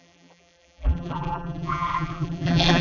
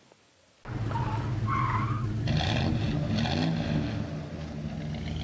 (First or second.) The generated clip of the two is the first